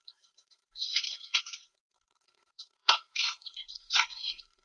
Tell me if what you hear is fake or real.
fake